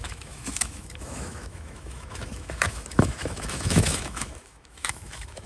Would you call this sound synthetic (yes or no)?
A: yes